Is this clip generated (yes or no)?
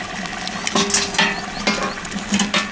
no